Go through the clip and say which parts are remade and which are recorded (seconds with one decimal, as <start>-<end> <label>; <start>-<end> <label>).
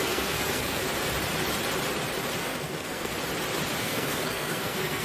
0.0-0.8 remade; 0.8-2.4 recorded; 2.4-3.1 remade; 3.1-3.8 recorded; 3.8-5.0 remade